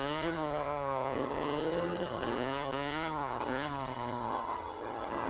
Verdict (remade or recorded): remade